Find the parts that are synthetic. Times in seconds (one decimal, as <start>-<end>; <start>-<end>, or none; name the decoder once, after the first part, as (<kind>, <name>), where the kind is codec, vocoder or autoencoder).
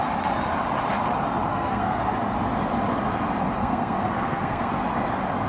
1.5-2.0 (codec, SNAC); 3.6-4.7